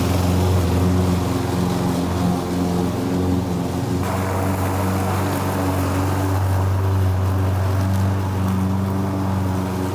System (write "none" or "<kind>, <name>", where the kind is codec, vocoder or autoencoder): none